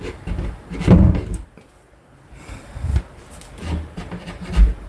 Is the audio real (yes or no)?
yes